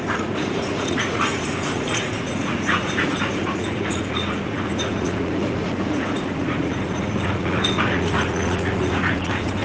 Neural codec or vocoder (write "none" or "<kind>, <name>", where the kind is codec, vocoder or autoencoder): vocoder, Vocos